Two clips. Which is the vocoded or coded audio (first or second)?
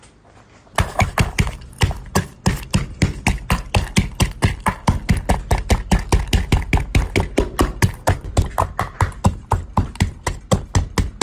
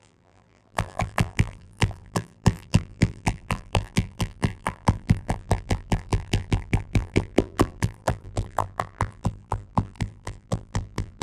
second